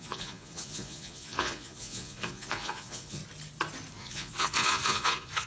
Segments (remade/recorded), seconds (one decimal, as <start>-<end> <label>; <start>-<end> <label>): 0.0-3.2 remade; 3.2-4.0 recorded; 4.0-5.5 remade

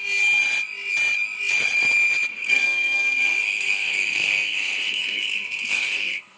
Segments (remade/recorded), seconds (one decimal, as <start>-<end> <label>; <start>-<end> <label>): 0.0-2.3 recorded; 2.3-6.4 remade

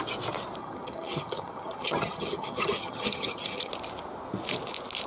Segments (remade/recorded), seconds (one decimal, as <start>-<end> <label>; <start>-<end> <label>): 0.0-0.6 recorded; 0.6-3.7 remade; 3.7-5.1 recorded

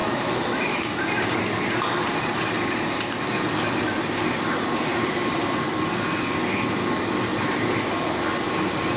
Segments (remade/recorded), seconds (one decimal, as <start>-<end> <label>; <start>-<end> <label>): 0.0-0.9 remade; 0.9-9.0 recorded

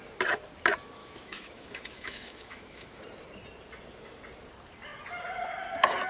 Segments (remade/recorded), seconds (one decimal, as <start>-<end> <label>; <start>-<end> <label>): 0.0-1.0 recorded; 1.0-3.0 remade; 3.0-6.1 recorded

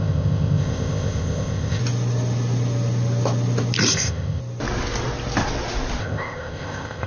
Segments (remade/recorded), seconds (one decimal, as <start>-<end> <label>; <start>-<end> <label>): 0.0-1.8 remade; 1.8-3.9 recorded; 3.9-4.4 remade; 4.4-6.0 recorded; 6.0-7.1 remade

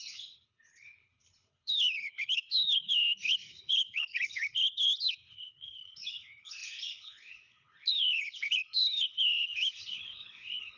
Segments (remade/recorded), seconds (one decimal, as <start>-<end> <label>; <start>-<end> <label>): 0.0-10.8 remade

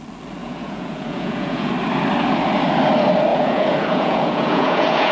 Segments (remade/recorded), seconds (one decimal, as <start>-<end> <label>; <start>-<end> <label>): 0.0-0.4 recorded; 0.4-1.7 remade; 1.7-3.3 recorded; 3.3-5.1 remade